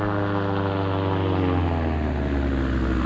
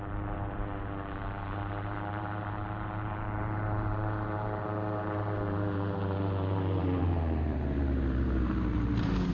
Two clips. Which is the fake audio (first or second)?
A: second